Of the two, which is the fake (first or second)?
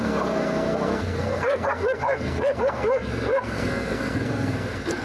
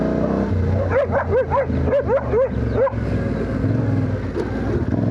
first